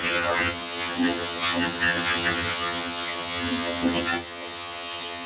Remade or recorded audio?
remade